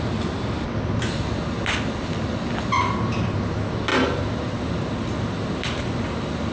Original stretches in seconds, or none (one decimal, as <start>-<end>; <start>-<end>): 0.0-6.5